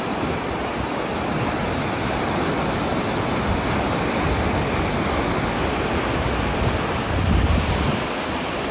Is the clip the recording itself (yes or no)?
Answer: yes